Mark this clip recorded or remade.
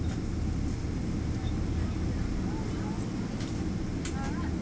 recorded